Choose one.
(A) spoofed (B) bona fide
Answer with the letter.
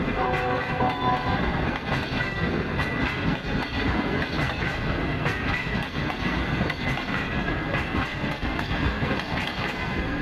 A